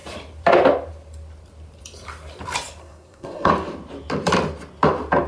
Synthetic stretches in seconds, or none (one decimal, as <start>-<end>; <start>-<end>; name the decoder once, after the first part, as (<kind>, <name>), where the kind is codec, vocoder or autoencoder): 2.8-3.5 (codec, SNAC)